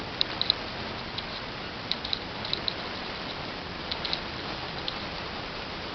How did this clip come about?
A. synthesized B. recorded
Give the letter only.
A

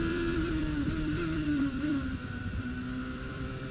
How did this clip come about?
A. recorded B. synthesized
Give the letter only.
B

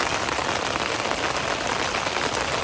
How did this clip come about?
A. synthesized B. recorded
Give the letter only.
B